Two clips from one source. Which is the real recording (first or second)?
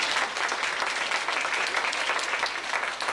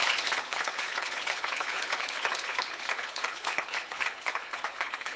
first